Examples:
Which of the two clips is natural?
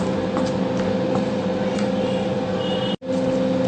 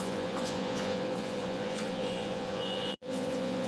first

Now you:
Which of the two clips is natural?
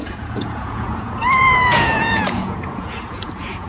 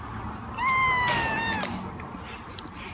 second